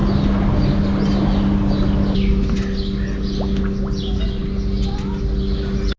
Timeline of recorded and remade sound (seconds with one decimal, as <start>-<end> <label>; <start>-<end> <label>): 0.0-6.0 recorded